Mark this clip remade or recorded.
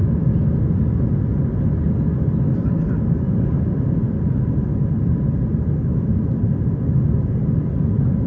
recorded